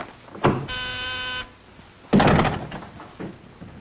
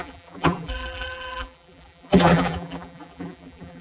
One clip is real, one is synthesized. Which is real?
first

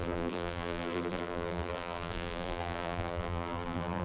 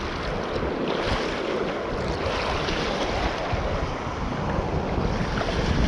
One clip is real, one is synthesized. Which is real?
second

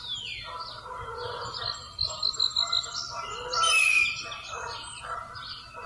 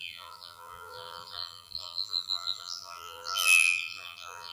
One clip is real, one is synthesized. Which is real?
first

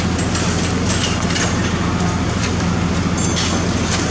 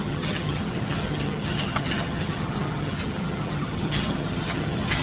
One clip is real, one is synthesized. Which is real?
first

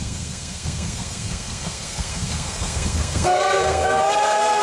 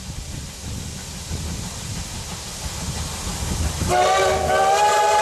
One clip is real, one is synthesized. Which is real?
second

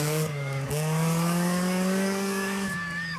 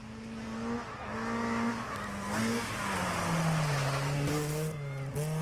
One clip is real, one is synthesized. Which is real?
second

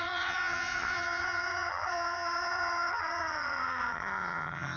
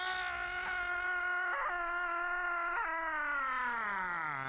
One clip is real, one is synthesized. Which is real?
second